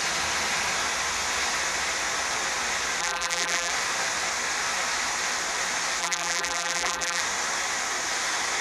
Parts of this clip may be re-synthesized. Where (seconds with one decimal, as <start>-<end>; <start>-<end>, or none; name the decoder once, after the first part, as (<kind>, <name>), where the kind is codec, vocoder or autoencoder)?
3.0-3.7 (vocoder, BigVGAN v2); 6.0-7.2